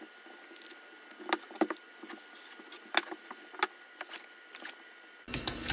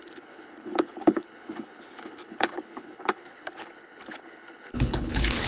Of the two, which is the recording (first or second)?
first